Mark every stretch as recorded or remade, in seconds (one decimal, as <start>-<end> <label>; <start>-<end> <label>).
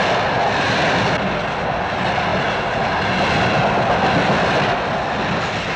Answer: 0.0-5.8 recorded